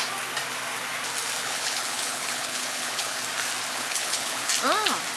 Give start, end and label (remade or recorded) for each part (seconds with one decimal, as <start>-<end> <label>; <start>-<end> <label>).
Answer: 0.0-1.4 recorded; 1.4-3.2 remade; 3.2-3.7 recorded; 3.7-4.5 remade; 4.5-5.2 recorded